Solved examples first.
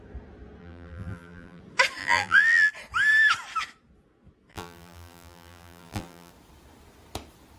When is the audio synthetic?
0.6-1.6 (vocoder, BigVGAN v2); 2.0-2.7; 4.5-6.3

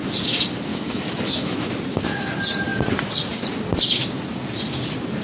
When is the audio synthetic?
0.7-1.7 (autoencoder, DAC-VAE)

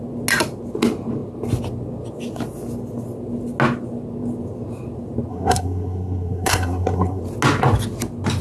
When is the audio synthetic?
5.3-7.2 (codec, SNAC)

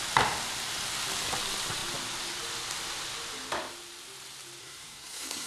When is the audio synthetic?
4.6-5.5 (codec, SNAC)

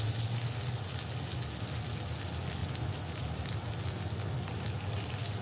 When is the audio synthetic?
none